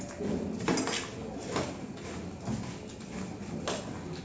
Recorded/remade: recorded